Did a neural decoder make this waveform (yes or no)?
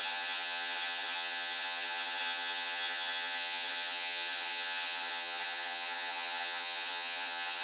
yes